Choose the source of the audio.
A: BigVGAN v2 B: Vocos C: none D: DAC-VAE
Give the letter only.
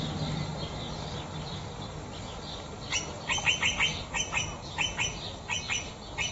C